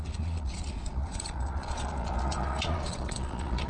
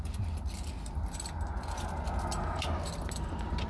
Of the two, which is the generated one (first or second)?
first